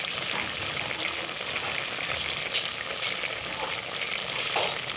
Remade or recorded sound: recorded